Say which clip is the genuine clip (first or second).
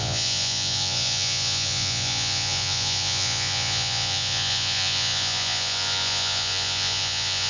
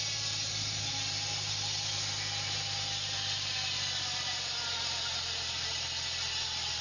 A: second